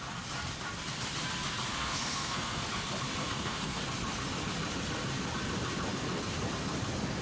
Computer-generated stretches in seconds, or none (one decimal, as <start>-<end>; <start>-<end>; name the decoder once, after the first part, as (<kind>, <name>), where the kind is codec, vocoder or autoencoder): 1.7-2.6 (codec, SNAC); 3.2-3.8

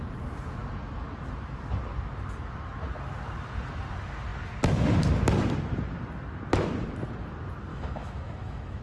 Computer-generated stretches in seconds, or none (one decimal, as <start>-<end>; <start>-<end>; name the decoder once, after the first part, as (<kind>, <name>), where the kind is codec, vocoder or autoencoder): 7.7-8.8 (autoencoder, DAC-VAE)

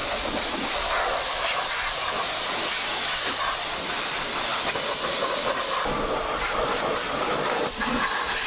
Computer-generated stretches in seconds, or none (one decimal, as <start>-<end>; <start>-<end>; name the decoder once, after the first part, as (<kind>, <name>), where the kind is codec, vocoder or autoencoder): none

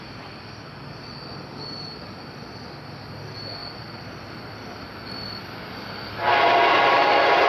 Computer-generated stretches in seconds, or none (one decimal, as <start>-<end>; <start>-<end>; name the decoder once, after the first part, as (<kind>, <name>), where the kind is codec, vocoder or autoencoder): none